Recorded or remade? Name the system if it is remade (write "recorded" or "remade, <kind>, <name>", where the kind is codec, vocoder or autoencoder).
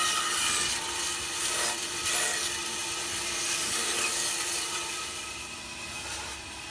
recorded